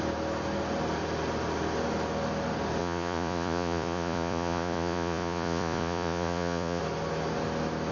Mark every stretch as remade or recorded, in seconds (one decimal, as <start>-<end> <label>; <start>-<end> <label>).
0.0-2.8 recorded; 2.8-6.8 remade; 6.8-7.9 recorded